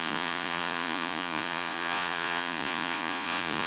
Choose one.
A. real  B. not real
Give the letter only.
B